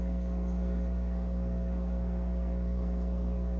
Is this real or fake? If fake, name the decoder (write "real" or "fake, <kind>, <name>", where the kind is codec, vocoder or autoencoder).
fake, codec, SNAC